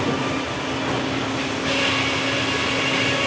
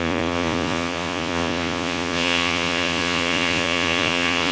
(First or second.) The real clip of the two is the first